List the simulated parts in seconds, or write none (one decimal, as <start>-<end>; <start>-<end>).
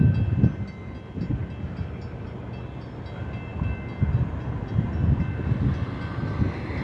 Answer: none